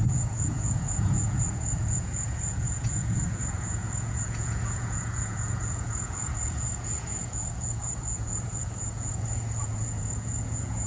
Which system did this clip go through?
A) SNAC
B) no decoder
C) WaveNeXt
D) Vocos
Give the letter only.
D